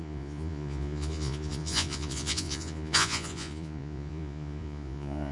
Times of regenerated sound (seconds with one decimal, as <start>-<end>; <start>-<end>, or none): 0.0-5.3